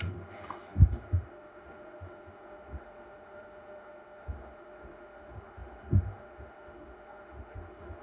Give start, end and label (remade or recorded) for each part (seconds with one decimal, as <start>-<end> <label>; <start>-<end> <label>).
0.0-8.0 remade